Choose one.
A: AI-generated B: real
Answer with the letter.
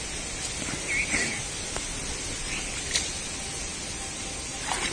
B